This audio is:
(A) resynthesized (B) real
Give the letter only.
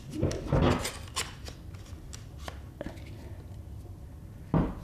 B